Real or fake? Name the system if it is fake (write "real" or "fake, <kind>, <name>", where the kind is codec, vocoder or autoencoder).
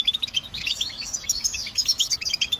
fake, autoencoder, DAC-VAE